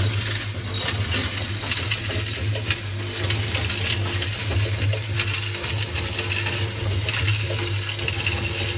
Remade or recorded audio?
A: recorded